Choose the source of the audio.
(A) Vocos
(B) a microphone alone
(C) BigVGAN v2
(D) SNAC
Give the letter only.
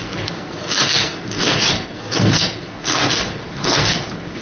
D